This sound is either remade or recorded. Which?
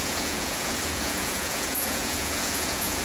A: remade